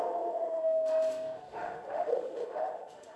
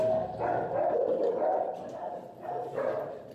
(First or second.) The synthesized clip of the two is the first